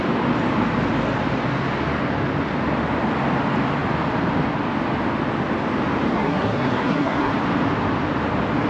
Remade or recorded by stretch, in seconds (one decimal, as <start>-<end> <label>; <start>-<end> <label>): 0.0-6.1 recorded; 6.1-7.3 remade; 7.3-8.7 recorded